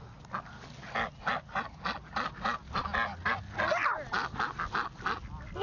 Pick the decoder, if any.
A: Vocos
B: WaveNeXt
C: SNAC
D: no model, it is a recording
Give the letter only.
D